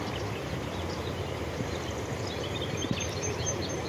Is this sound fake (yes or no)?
yes